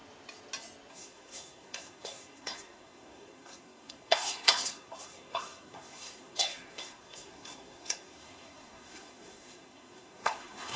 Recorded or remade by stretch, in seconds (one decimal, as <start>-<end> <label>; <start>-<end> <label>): 0.0-0.9 recorded; 0.9-10.8 remade